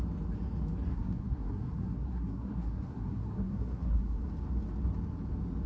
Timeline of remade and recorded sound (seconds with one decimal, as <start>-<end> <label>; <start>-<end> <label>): 0.0-0.9 recorded; 0.9-4.3 remade; 4.3-5.7 recorded